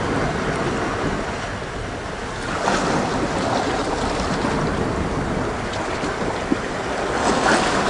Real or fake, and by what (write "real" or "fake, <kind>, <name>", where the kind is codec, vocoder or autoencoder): real